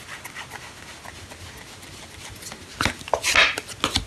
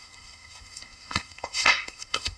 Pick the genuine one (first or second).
first